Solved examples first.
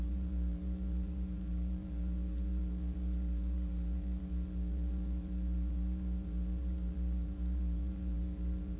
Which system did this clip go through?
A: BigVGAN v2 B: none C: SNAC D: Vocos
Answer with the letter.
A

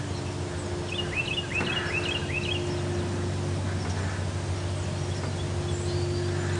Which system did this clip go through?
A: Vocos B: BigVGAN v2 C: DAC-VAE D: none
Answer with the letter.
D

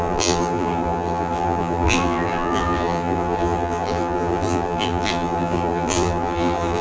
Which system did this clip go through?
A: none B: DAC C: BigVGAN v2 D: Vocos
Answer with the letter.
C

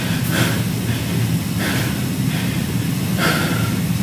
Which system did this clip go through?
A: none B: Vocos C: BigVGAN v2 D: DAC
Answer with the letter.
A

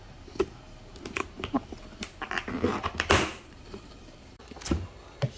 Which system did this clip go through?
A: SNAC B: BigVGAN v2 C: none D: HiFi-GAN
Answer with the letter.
B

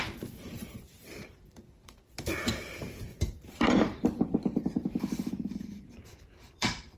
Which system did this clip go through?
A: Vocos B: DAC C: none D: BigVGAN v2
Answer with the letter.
D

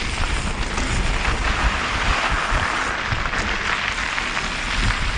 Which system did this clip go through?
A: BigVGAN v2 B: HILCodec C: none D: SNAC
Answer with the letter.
C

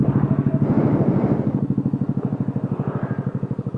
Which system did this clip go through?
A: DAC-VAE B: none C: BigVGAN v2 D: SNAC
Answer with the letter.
B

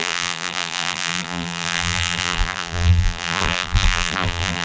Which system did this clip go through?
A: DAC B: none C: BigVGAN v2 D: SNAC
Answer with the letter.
C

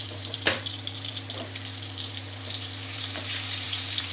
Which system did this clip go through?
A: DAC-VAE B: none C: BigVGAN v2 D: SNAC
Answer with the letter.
C